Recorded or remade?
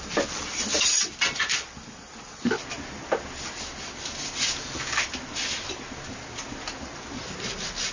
recorded